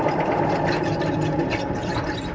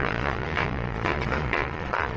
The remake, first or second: second